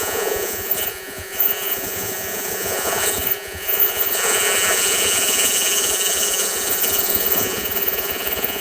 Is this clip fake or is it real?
fake